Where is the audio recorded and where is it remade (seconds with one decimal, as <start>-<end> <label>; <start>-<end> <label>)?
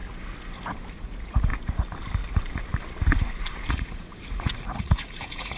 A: 0.0-0.9 recorded; 0.9-1.5 remade; 1.5-3.7 recorded; 3.7-5.6 remade